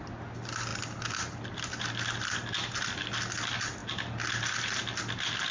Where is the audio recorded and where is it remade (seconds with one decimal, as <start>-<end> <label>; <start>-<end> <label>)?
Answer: 0.0-5.5 recorded